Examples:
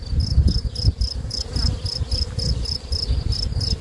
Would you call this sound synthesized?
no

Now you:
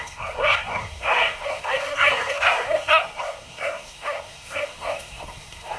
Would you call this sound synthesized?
yes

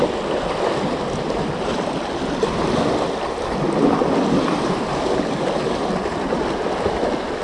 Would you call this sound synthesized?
no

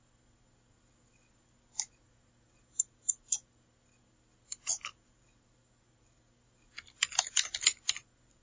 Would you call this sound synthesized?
no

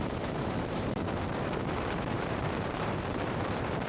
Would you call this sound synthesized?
yes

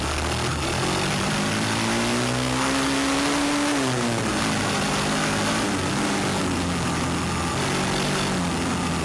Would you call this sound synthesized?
no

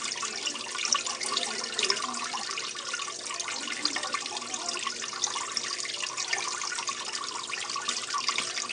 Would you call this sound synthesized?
no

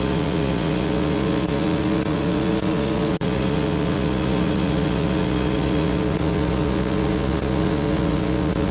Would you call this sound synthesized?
yes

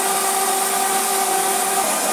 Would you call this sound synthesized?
no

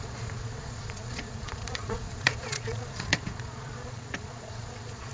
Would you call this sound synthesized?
yes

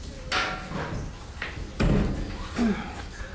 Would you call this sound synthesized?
no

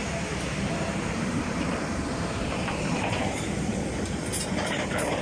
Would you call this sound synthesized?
yes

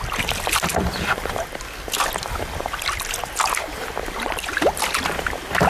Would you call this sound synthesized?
no